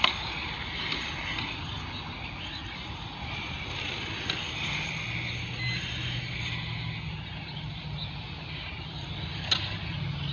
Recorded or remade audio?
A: recorded